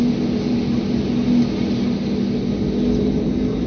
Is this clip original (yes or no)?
yes